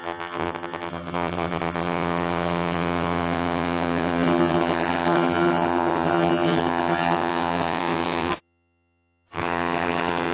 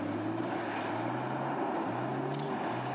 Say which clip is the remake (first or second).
first